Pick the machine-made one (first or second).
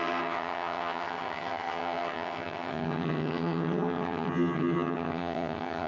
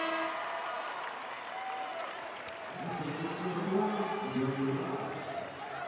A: first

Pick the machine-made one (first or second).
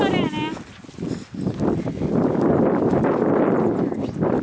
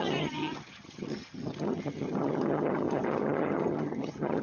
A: second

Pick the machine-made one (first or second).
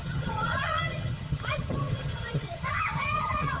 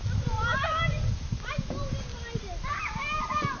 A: first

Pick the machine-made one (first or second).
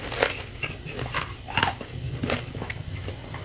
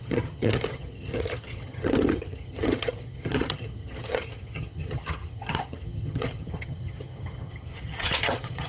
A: second